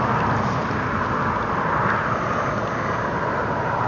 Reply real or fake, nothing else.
real